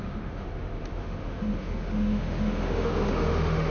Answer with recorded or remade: remade